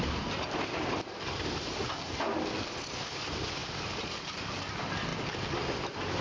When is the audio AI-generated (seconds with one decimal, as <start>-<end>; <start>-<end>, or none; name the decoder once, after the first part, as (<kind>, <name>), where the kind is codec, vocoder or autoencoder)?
none